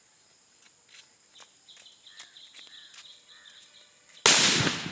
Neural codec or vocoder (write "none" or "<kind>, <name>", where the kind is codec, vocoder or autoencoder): none